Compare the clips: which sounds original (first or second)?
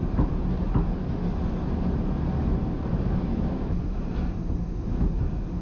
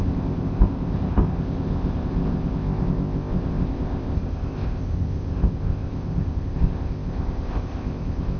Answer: first